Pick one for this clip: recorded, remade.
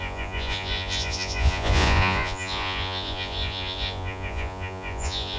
remade